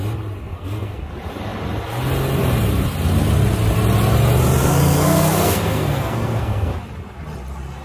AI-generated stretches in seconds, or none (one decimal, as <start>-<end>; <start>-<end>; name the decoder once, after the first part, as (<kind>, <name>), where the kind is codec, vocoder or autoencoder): 0.4-1.1 (codec, SNAC); 4.6-6.7